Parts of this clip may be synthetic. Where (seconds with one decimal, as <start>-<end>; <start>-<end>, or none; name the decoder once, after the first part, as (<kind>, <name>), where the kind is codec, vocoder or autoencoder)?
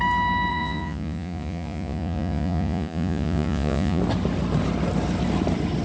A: 0.5-4.0 (vocoder, Vocos)